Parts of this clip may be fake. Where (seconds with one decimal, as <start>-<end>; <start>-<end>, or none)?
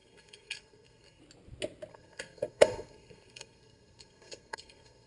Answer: 0.0-1.2; 1.9-5.1